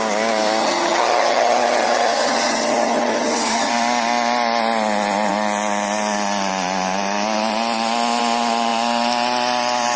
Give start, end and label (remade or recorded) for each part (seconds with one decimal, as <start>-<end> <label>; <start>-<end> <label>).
0.0-0.6 recorded; 0.6-3.7 remade; 3.7-10.0 recorded